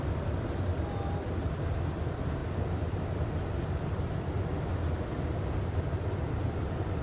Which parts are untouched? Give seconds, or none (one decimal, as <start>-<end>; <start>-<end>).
0.0-7.0